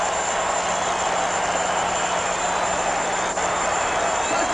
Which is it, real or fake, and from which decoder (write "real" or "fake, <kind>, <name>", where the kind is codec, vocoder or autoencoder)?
real